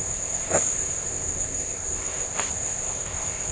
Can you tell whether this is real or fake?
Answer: fake